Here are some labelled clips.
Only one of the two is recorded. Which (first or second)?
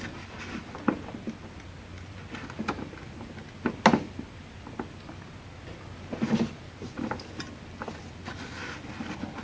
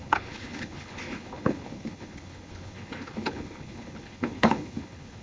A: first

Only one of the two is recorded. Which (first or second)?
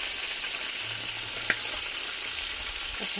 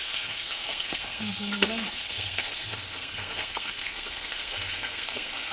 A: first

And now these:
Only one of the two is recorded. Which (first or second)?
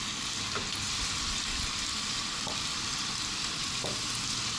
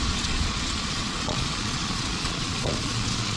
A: first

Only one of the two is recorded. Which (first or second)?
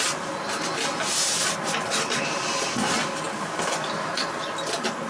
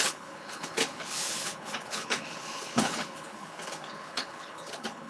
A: first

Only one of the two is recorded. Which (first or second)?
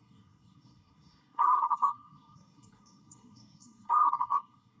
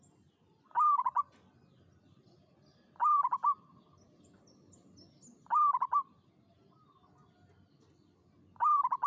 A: second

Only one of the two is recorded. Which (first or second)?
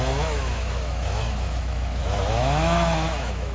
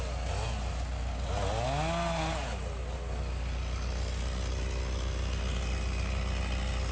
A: second